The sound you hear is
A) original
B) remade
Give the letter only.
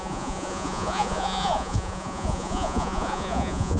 B